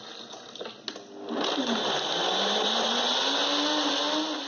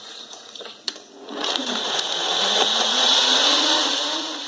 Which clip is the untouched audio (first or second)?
first